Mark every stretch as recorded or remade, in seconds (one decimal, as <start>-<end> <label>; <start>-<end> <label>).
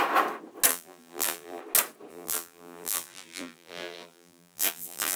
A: 0.0-0.7 recorded; 0.7-1.6 remade; 1.6-2.1 recorded; 2.1-5.2 remade